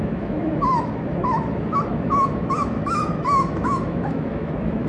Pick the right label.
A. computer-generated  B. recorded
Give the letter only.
A